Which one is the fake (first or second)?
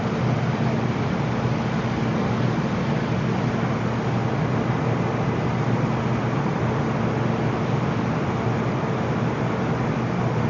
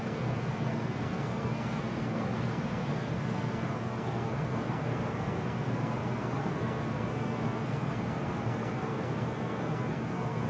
second